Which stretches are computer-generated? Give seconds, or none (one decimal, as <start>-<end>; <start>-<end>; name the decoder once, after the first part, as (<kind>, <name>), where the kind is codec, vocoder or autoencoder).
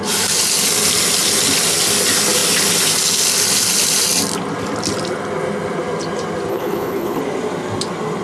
6.5-7.2 (codec, HILCodec)